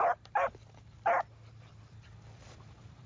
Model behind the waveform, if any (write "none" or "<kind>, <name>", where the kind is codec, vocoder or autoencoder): vocoder, BigVGAN v2